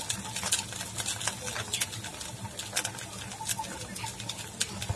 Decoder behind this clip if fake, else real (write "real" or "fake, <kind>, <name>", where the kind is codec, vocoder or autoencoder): real